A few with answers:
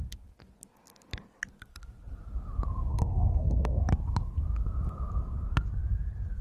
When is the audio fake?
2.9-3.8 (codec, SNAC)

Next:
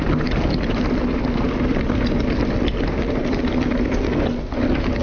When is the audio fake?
none